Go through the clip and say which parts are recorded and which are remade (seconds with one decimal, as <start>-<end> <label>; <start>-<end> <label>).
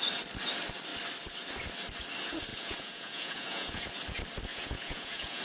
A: 0.0-2.5 recorded; 2.5-3.9 remade; 3.9-4.5 recorded; 4.5-5.4 remade